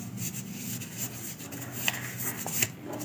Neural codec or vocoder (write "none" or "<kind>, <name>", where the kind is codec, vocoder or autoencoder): none